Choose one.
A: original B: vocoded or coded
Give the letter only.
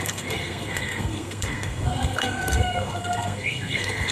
B